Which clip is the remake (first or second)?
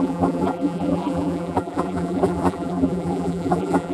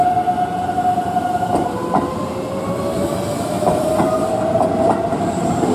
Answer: first